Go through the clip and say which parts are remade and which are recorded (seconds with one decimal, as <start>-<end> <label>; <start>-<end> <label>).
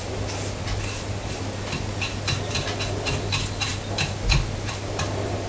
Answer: 0.0-5.5 recorded